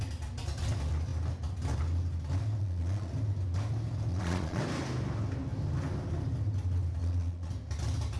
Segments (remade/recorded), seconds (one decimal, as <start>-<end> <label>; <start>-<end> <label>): 0.0-2.6 recorded; 2.6-3.1 remade; 3.1-4.1 recorded; 4.1-4.6 remade; 4.6-7.0 recorded; 7.0-7.5 remade; 7.5-8.2 recorded